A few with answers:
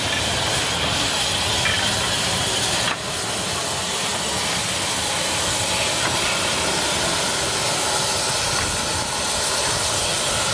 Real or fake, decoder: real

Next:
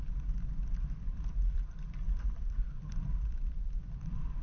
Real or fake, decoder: real